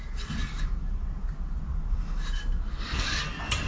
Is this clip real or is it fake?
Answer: real